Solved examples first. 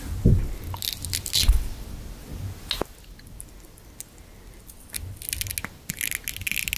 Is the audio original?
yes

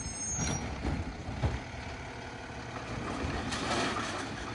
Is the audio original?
yes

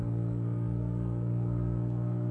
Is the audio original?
no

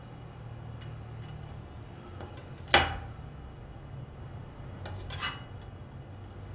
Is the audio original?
yes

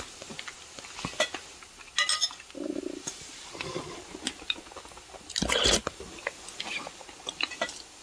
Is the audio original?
yes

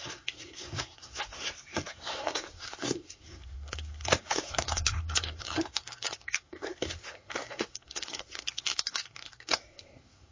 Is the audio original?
no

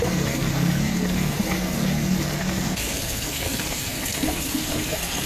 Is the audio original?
no